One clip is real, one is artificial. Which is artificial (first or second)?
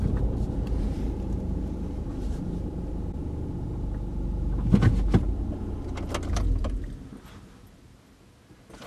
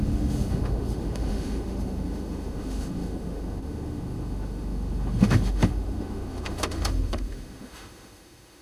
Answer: second